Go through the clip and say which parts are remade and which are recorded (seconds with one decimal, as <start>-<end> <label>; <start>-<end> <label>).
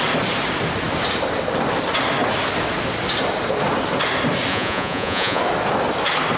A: 0.0-4.5 recorded; 4.5-5.4 remade; 5.4-6.4 recorded